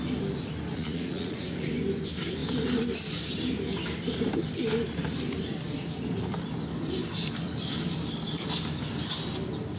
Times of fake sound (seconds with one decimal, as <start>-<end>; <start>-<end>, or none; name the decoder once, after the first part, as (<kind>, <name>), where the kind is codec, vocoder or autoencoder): 0.7-1.7 (vocoder, Vocos)